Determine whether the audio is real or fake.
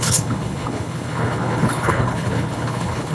fake